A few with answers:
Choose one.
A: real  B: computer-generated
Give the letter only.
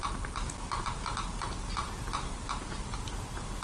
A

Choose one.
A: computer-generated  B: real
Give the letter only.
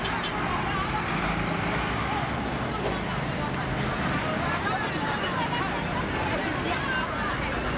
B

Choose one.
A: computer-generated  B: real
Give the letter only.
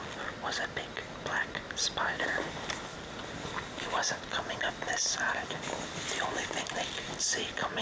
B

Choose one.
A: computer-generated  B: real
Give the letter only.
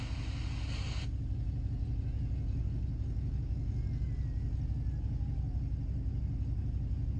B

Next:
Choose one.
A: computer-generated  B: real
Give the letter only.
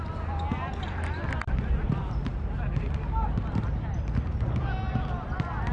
B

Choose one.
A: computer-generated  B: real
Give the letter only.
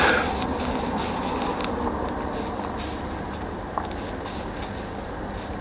B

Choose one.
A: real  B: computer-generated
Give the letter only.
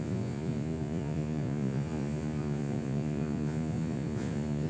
B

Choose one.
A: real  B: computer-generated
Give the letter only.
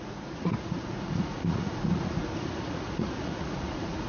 B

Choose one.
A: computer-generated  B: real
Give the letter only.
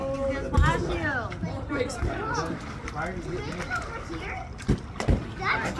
B